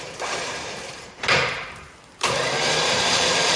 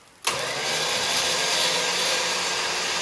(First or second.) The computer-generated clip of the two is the first